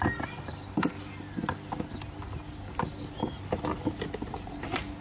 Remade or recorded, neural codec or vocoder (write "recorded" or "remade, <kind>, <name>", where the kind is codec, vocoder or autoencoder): recorded